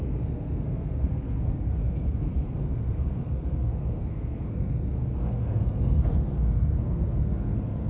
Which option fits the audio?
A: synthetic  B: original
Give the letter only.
A